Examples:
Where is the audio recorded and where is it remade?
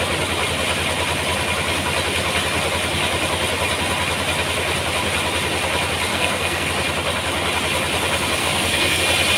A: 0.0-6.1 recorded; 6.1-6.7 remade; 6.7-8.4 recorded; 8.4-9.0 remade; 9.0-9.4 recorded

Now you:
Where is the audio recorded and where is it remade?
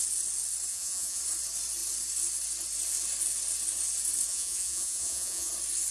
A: 0.0-0.7 recorded; 0.7-1.2 remade; 1.2-4.3 recorded; 4.3-5.5 remade; 5.5-5.9 recorded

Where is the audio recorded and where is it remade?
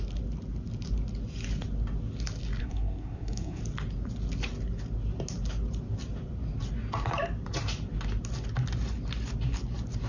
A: 0.0-2.6 recorded; 2.6-3.6 remade; 3.6-10.1 recorded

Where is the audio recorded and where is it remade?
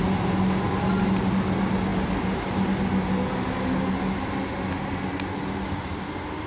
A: 0.0-6.5 recorded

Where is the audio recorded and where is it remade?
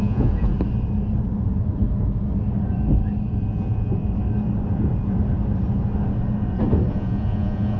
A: 0.0-0.5 remade; 0.5-3.5 recorded; 3.5-4.0 remade; 4.0-6.9 recorded; 6.9-7.8 remade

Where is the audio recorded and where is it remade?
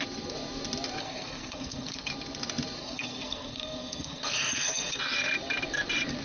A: 0.0-1.0 recorded; 1.0-2.1 remade; 2.1-2.8 recorded; 2.8-5.0 remade; 5.0-6.2 recorded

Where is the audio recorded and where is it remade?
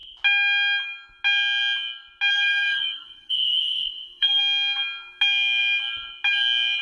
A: 0.0-2.3 recorded; 2.3-4.4 remade; 4.4-6.8 recorded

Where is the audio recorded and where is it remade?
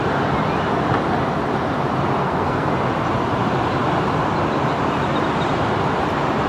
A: 0.0-2.2 recorded; 2.2-2.7 remade; 2.7-6.5 recorded